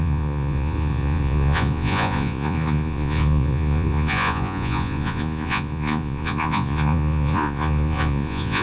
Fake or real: fake